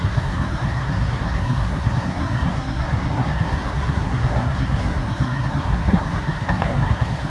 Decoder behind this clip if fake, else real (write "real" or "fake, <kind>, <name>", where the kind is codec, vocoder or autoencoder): fake, codec, SNAC